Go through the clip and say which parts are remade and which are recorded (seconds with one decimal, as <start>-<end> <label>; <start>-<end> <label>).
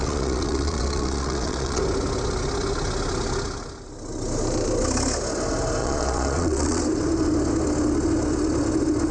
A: 0.0-1.8 remade; 1.8-5.8 recorded; 5.8-6.8 remade; 6.8-9.1 recorded